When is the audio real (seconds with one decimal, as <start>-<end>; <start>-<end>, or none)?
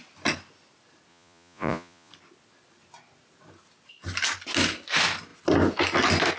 0.0-1.1; 2.1-6.4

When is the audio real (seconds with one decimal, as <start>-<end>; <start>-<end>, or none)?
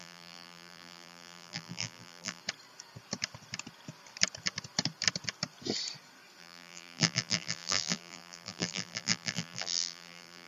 2.4-6.4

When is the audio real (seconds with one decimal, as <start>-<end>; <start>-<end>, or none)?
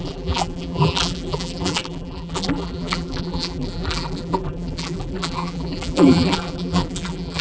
none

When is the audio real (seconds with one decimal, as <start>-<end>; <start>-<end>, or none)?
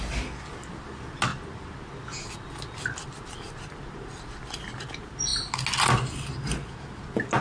0.0-7.4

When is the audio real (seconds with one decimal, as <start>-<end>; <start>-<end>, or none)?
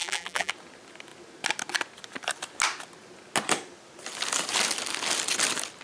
0.5-5.8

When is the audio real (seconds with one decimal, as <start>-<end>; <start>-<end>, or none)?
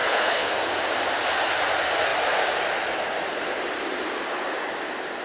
0.5-5.2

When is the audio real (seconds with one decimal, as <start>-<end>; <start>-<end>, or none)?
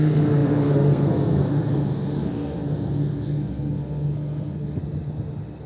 4.8-5.7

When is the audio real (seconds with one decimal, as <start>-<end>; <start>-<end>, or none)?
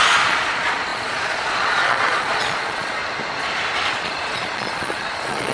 3.0-3.9